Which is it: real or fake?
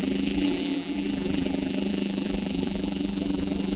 fake